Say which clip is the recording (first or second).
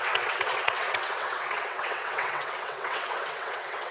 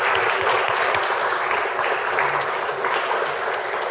second